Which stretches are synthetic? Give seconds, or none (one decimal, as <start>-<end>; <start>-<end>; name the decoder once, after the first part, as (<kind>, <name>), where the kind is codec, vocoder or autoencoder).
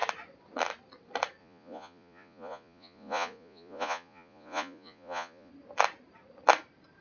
1.4-5.5 (vocoder, Vocos)